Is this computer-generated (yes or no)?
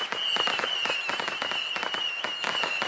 no